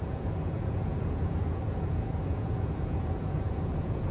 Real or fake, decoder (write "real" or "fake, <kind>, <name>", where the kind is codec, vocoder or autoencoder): fake, vocoder, Vocos